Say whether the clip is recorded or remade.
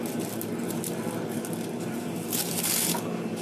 recorded